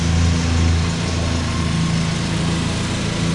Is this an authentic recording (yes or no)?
yes